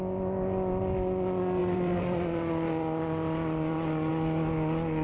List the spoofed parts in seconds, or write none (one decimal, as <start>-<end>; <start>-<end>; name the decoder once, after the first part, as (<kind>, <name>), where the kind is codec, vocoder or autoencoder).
1.6-4.1 (vocoder, BigVGAN v2)